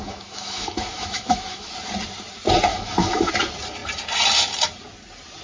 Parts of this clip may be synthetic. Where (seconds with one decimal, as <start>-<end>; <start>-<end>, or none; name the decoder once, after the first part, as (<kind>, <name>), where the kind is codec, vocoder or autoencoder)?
0.0-1.7 (autoencoder, DAC-VAE); 2.7-3.3